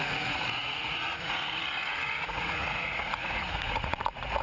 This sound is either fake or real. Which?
fake